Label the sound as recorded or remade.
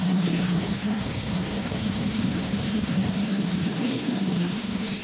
remade